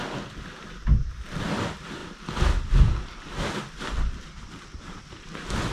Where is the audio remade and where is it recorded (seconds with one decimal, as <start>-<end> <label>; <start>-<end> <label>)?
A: 0.0-5.7 recorded